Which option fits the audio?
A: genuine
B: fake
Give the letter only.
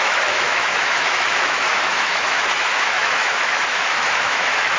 B